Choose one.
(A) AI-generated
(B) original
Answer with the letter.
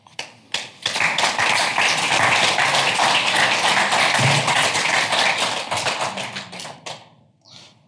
B